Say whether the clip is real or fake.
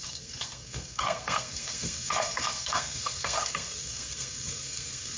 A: fake